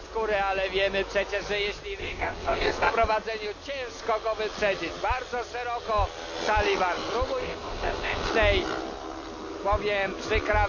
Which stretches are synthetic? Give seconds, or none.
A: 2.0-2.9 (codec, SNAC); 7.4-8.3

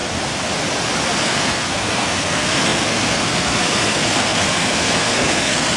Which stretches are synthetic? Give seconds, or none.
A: 1.2-5.8 (codec, SNAC)

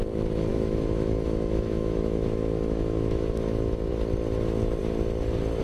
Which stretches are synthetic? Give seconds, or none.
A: 0.5-3.9 (autoencoder, DAC-VAE)

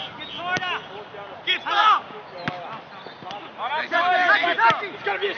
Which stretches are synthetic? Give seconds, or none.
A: 1.8-2.6 (codec, DAC)

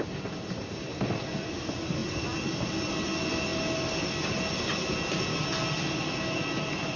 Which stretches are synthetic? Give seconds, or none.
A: none

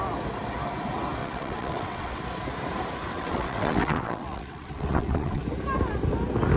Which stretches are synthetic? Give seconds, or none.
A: 1.2-2.2 (vocoder, WaveNeXt); 3.1-5.4